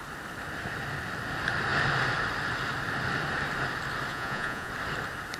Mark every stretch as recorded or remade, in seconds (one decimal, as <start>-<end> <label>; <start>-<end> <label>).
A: 0.0-4.1 recorded; 4.1-4.7 remade; 4.7-5.4 recorded